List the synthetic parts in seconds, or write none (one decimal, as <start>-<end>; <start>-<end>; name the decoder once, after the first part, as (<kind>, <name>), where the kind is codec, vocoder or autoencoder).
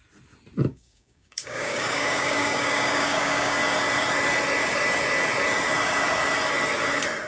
0.7-3.6 (codec, DAC)